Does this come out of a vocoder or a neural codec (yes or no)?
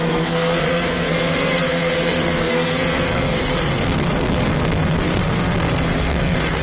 yes